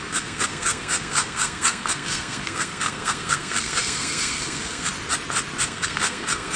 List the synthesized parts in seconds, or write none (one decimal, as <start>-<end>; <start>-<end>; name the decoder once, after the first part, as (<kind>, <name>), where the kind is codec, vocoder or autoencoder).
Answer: 0.0-4.9 (codec, SNAC); 5.6-6.6